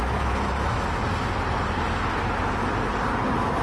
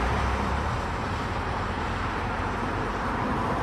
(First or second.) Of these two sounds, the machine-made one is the second